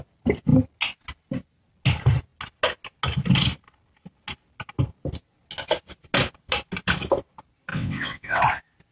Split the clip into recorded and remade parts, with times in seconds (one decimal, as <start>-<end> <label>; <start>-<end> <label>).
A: 0.0-7.7 recorded; 7.7-8.4 remade; 8.4-8.9 recorded